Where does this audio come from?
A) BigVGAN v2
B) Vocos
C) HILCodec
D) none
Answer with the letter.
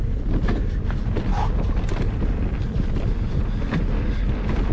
D